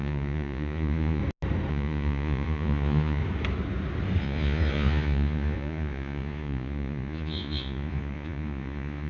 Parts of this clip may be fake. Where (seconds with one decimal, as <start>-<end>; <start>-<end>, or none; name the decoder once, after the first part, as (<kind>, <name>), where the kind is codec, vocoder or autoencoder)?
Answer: 0.0-1.2 (vocoder, Vocos); 1.7-3.2; 4.2-9.1